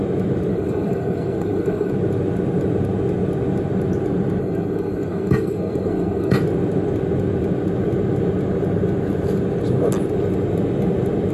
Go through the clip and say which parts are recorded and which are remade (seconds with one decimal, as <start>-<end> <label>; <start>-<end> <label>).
0.0-0.5 recorded; 0.5-1.9 remade; 1.9-4.4 recorded; 4.4-6.4 remade; 6.4-11.3 recorded